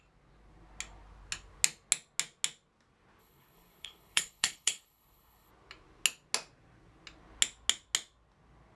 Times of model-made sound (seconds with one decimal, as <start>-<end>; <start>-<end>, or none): 3.2-5.5

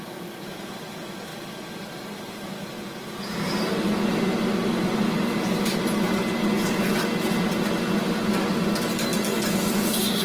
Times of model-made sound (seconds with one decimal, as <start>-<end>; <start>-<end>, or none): none

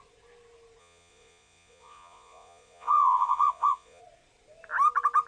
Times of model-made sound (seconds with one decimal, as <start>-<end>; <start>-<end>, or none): 0.8-4.0

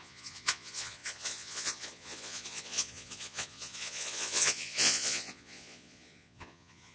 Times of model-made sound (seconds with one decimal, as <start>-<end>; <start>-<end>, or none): 0.0-6.9

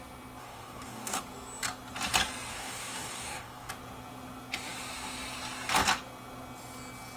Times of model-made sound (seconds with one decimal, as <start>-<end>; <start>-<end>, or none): 0.4-1.2; 2.5-3.7

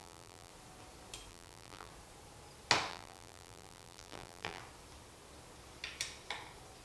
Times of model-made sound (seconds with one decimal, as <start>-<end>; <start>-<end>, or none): 0.0-0.5; 1.3-1.9; 2.9-4.6